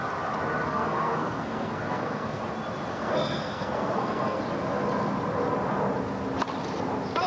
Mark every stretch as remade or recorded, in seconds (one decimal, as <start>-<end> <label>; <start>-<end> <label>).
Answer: 0.0-0.7 recorded; 0.7-2.4 remade; 2.4-2.9 recorded; 2.9-4.4 remade; 4.4-7.3 recorded